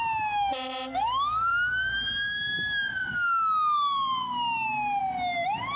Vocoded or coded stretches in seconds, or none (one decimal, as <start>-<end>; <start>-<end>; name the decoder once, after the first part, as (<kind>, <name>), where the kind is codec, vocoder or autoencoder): none